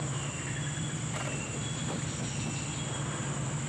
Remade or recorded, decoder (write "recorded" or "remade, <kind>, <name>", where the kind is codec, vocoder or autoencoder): recorded